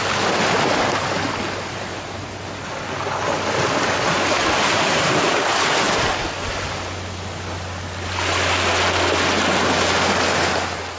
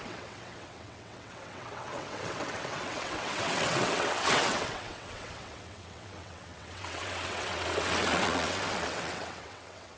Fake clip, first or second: second